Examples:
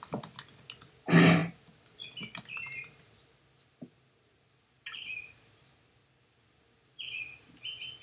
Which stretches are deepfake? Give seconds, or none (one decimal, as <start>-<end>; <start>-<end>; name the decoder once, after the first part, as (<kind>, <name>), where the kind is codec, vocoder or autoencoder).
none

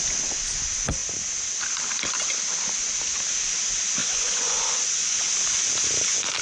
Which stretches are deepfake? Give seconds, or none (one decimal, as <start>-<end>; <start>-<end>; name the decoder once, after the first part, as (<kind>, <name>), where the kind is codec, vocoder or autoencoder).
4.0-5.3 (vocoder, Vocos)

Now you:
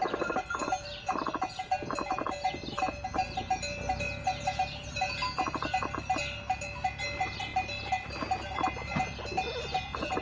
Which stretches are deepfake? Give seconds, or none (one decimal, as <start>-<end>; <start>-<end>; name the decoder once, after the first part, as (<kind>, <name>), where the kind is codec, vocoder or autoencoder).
none

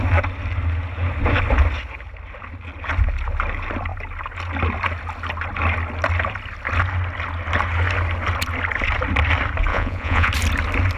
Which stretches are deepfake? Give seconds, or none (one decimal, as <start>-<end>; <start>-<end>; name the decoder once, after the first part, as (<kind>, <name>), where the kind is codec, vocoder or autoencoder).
9.7-10.3 (vocoder, Vocos)

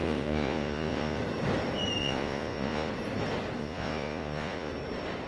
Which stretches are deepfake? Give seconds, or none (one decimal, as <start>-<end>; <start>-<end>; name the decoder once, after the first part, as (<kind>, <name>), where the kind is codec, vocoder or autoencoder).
0.0-1.2 (vocoder, Vocos); 2.0-2.9; 3.6-4.7

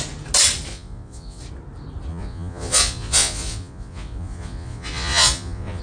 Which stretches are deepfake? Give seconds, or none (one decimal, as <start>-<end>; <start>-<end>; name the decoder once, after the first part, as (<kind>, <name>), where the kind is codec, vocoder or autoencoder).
0.7-1.4 (vocoder, Vocos); 2.1-5.8

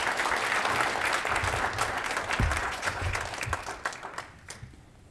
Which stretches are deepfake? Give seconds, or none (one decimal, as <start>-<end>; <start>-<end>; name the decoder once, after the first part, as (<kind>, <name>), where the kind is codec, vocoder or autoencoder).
2.6-3.2 (vocoder, Vocos)